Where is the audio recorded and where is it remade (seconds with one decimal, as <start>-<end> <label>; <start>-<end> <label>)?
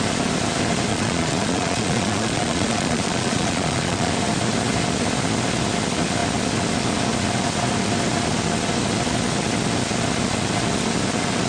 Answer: 0.0-0.9 recorded; 0.9-4.1 remade; 4.1-11.5 recorded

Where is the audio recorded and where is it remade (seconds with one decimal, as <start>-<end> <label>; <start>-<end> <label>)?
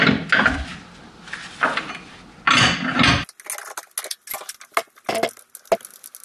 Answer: 0.0-6.2 recorded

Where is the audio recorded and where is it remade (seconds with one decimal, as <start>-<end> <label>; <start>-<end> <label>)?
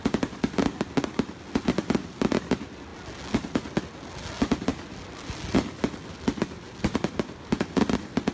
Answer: 0.0-8.3 recorded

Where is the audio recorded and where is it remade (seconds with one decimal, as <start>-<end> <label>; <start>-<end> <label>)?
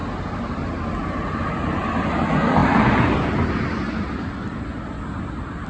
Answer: 0.0-5.7 recorded